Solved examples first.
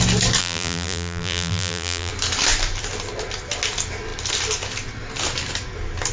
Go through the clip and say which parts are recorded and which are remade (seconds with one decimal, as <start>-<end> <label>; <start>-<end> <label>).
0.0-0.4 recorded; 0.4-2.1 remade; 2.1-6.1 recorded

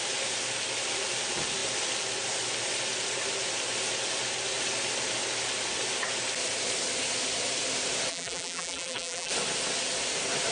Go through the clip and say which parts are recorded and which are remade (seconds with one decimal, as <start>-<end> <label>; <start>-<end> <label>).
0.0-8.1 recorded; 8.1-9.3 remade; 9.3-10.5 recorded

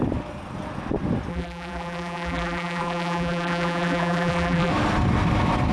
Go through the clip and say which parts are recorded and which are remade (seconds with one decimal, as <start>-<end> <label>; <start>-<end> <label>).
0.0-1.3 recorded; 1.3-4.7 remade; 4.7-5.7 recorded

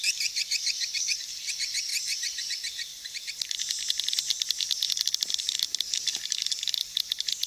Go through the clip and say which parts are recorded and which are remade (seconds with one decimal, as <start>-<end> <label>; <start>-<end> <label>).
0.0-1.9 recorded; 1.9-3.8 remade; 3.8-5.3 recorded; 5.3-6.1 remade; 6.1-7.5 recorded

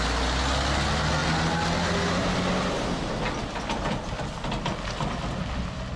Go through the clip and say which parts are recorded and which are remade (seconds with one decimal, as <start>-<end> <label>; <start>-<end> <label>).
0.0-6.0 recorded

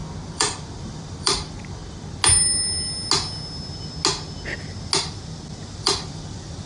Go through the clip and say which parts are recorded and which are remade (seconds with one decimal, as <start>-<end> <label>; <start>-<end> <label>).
0.0-1.8 remade; 1.8-5.8 recorded; 5.8-6.7 remade